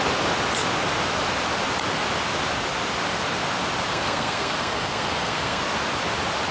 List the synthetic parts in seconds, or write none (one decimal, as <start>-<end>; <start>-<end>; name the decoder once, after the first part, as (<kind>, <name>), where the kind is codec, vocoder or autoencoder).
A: 3.9-5.6 (codec, SNAC)